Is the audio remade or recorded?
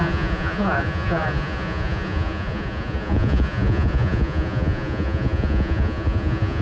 remade